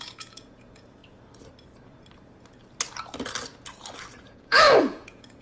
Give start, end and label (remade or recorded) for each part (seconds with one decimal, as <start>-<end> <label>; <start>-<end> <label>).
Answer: 0.0-1.0 remade; 1.0-4.2 recorded; 4.2-5.4 remade